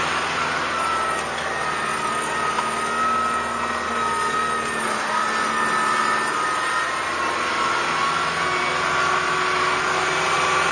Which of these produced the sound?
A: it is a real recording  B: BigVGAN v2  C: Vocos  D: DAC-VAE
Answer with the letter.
A